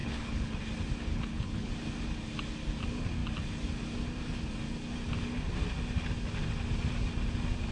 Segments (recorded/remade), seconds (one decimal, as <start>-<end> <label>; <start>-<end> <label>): 0.0-0.6 remade; 0.6-1.1 recorded; 1.1-1.7 remade; 1.7-7.7 recorded